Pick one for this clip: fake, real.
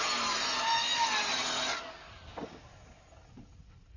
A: real